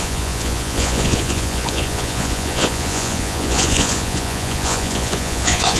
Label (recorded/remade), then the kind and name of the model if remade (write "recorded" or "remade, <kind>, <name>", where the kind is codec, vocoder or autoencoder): remade, vocoder, Vocos